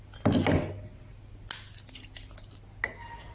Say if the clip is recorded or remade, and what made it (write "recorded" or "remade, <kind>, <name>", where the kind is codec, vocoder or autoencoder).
recorded